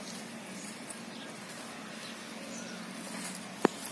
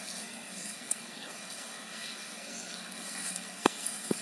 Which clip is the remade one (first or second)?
second